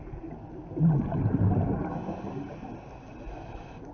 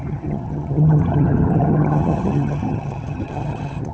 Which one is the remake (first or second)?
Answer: second